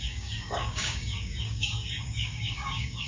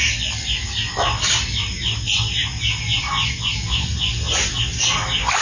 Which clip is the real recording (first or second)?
second